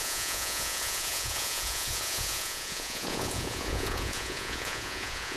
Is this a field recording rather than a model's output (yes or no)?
no